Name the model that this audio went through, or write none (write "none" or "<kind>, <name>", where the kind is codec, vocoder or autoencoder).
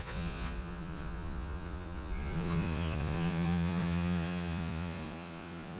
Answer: vocoder, Vocos